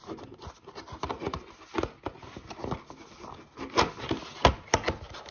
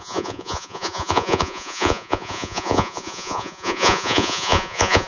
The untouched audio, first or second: first